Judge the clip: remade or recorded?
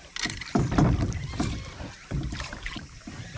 remade